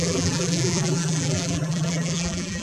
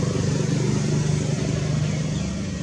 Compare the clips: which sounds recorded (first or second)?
second